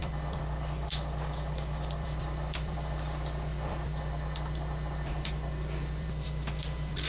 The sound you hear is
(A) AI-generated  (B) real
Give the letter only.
A